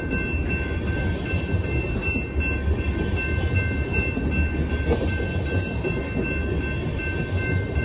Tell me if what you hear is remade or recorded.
recorded